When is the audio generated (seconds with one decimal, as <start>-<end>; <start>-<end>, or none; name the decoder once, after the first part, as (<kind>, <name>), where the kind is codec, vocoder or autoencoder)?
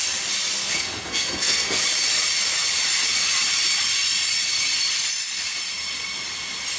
0.6-1.8 (codec, SNAC)